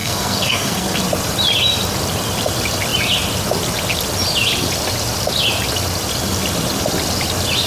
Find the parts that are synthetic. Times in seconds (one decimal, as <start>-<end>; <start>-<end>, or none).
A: 0.0-1.0